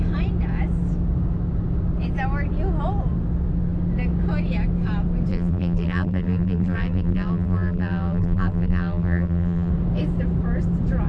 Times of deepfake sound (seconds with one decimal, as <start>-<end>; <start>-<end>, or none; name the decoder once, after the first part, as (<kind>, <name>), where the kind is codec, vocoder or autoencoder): 5.3-9.7 (vocoder, BigVGAN v2)